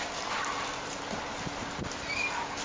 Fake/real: real